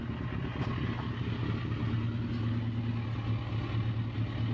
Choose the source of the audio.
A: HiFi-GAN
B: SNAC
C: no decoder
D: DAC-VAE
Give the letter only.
C